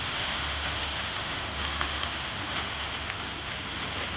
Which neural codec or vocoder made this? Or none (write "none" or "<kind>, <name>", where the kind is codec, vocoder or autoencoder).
autoencoder, DAC-VAE